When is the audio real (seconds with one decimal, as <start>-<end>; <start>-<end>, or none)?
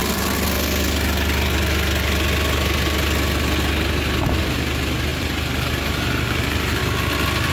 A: 0.0-4.5; 6.8-7.5